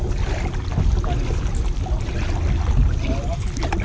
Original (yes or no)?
yes